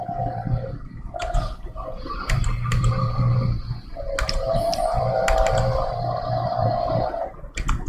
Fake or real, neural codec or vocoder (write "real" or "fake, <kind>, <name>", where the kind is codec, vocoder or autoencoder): fake, vocoder, BigVGAN v2